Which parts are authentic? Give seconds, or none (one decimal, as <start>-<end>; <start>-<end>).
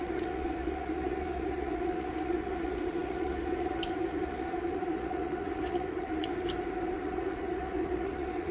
6.3-6.9